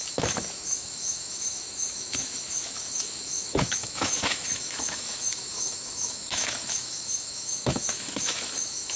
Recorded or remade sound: remade